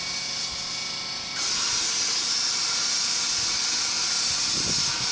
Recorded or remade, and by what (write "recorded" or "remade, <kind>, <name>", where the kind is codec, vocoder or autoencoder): recorded